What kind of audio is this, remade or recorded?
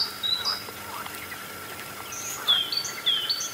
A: recorded